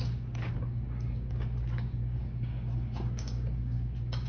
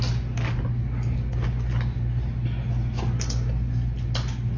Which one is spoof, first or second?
first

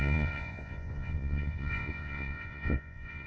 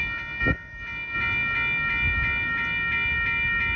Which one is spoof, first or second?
first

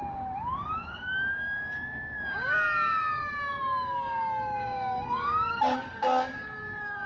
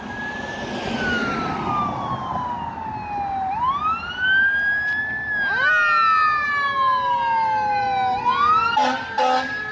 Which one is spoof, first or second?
first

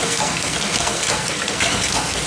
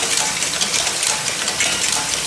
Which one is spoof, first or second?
first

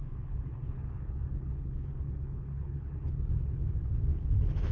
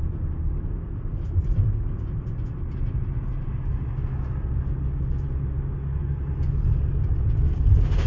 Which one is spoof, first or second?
first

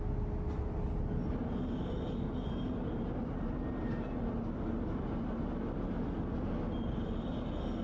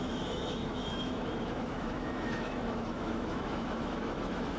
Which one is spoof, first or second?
second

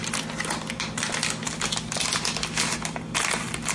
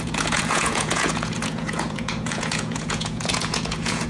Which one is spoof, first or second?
second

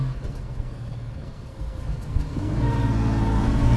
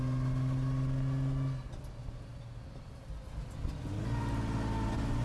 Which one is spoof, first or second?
first